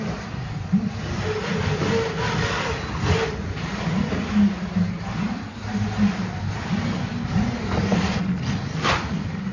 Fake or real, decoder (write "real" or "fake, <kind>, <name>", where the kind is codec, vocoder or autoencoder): real